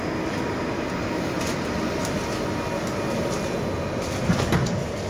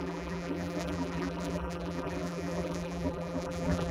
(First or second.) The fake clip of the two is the second